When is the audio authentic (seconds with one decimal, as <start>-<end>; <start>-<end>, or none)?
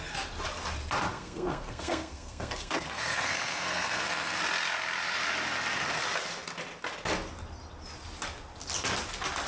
0.0-1.1; 4.4-9.5